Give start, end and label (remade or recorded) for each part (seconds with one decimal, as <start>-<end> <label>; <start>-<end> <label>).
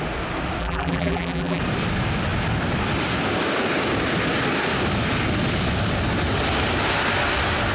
0.0-0.6 recorded; 0.6-1.6 remade; 1.6-7.7 recorded